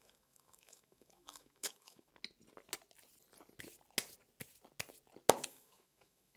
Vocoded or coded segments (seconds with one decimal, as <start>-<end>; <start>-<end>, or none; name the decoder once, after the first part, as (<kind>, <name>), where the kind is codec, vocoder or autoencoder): 0.0-2.1 (autoencoder, DAC-VAE); 5.5-6.4